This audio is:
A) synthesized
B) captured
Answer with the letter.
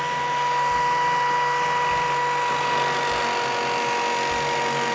B